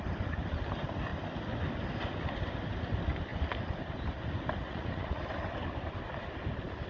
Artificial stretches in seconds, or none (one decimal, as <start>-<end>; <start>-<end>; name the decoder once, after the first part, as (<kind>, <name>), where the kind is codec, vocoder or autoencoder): 4.6-5.2 (vocoder, Vocos)